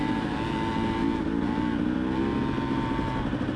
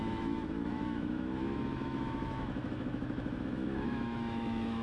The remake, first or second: second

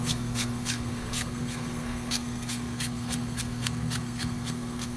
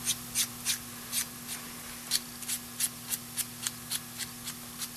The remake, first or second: first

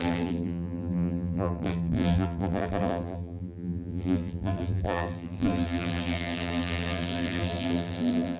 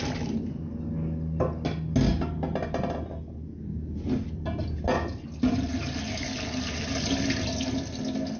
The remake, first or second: first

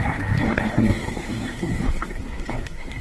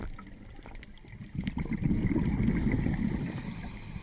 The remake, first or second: first